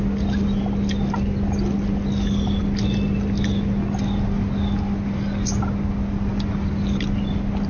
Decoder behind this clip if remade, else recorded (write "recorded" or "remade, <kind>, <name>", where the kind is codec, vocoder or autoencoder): recorded